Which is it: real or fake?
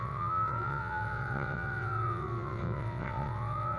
fake